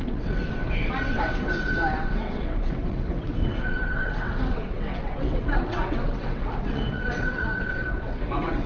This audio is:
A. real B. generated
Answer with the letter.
B